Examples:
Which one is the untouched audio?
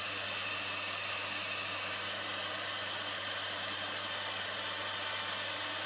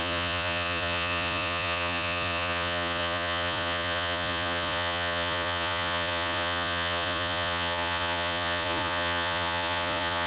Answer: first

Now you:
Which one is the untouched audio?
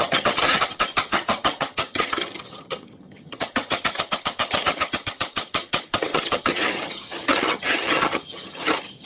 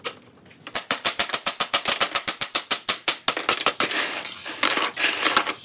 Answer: second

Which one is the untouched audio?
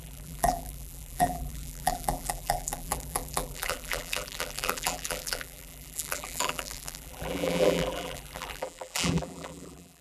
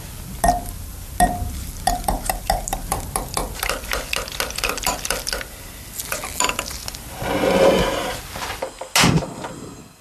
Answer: second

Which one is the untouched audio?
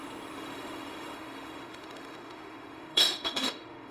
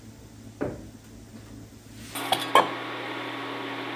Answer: second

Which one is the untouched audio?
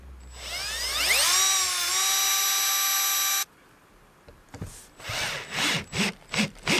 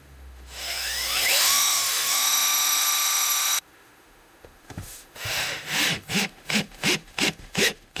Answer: first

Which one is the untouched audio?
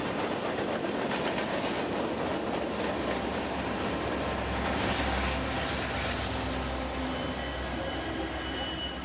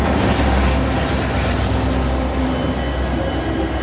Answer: second